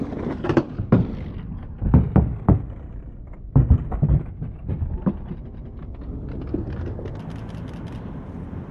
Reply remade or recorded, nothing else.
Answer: recorded